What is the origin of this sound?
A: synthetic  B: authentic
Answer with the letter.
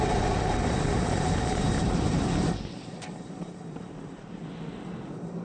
A